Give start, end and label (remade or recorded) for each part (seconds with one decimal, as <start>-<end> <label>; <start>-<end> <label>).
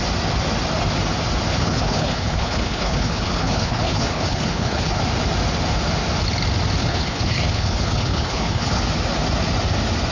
0.0-1.5 recorded; 1.5-5.0 remade; 5.0-6.8 recorded; 6.8-8.8 remade; 8.8-10.1 recorded